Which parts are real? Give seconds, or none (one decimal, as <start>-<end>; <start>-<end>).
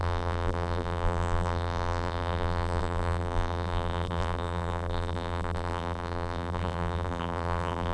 none